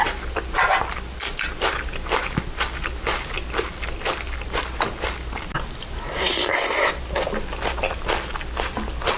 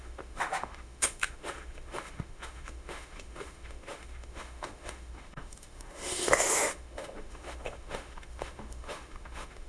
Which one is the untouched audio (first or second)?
first